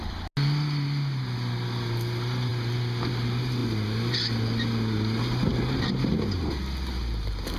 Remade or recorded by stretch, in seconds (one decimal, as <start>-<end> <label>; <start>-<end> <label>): 0.0-7.6 recorded